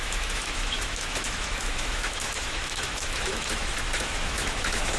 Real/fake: fake